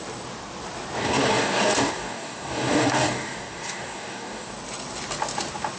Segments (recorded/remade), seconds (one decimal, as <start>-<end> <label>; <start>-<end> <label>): 0.0-1.0 recorded; 1.0-4.5 remade; 4.5-5.8 recorded